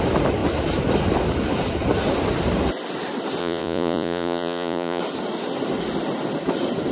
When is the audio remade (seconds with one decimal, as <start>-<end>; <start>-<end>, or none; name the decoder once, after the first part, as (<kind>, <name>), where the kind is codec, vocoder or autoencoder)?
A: 3.4-5.0 (vocoder, Vocos)